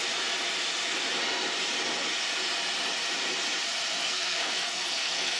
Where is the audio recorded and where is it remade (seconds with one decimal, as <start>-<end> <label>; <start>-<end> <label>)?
0.0-4.0 recorded; 4.0-5.4 remade